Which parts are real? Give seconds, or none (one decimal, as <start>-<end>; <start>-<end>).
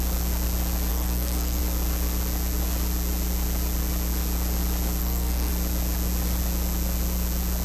0.0-0.9; 1.6-5.0; 5.5-7.6